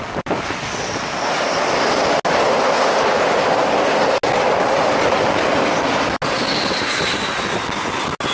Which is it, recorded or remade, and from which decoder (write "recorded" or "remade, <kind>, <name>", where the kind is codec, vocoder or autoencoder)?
recorded